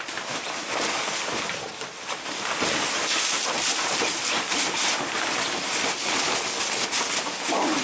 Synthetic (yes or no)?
no